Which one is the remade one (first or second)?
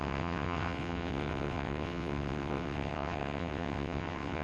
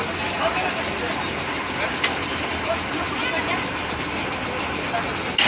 first